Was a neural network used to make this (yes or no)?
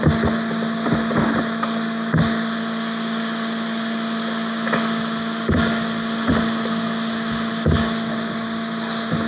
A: no